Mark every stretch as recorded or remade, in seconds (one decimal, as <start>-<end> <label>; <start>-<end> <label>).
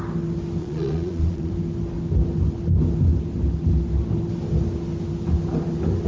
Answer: 0.0-0.6 recorded; 0.6-1.5 remade; 1.5-6.1 recorded